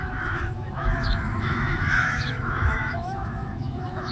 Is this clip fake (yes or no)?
yes